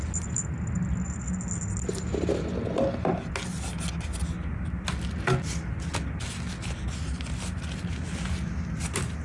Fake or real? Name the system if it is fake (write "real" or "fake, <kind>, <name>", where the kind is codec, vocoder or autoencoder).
real